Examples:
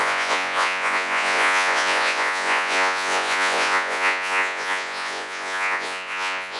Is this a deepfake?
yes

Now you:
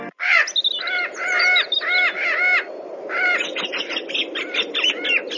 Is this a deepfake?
no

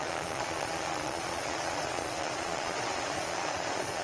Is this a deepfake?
yes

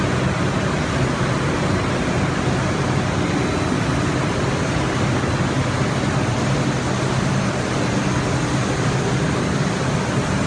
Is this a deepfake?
no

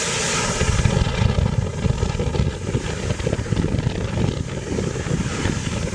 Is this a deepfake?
no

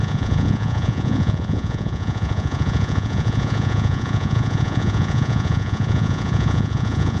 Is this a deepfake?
yes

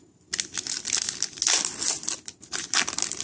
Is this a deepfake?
no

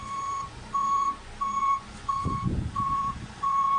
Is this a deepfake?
yes